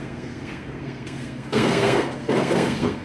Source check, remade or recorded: remade